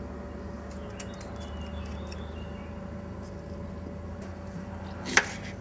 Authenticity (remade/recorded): recorded